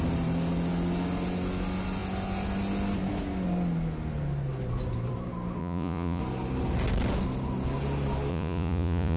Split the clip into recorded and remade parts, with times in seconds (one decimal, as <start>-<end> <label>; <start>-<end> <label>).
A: 0.0-5.6 recorded; 5.6-6.2 remade; 6.2-8.3 recorded; 8.3-9.2 remade